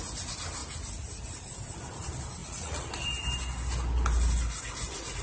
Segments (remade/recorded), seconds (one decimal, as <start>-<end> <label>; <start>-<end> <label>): 0.0-2.4 recorded; 2.4-2.9 remade; 2.9-5.2 recorded